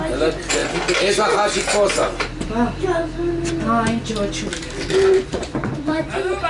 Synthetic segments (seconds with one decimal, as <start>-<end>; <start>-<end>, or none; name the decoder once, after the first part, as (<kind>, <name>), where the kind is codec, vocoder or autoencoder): 5.3-6.0 (vocoder, Vocos)